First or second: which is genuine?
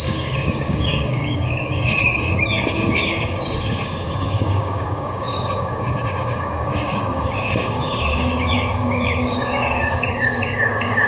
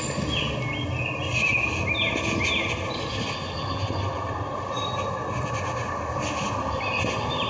second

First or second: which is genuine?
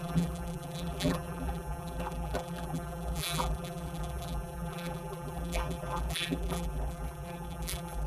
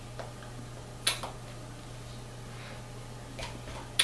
second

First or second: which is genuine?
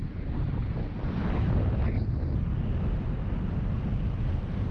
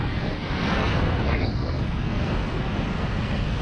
first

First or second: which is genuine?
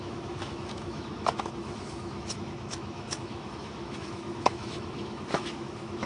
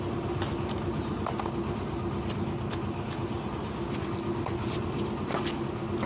second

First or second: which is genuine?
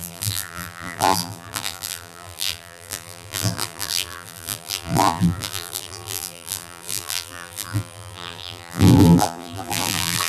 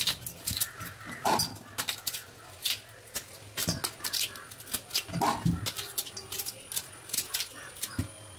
second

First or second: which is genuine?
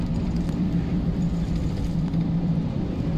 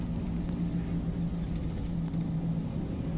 second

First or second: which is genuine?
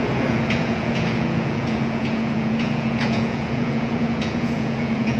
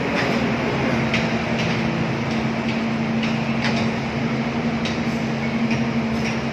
second